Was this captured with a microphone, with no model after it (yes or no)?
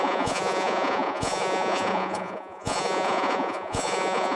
no